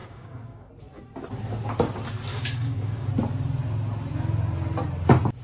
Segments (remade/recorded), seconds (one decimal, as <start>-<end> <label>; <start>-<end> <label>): 0.0-0.7 remade; 0.7-2.3 recorded; 2.3-3.1 remade; 3.1-5.4 recorded